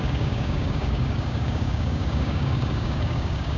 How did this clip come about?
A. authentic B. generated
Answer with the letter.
B